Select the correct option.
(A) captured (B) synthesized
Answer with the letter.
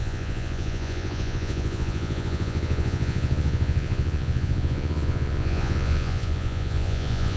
B